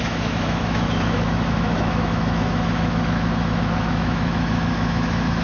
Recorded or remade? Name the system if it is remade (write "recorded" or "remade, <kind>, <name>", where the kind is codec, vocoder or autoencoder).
remade, autoencoder, DAC-VAE